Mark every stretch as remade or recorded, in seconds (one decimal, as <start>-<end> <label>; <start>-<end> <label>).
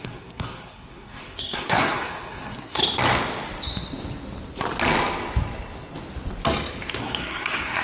0.0-2.8 remade; 2.8-7.0 recorded; 7.0-7.8 remade